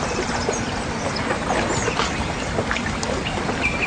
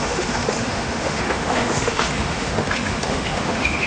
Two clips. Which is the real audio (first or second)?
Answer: first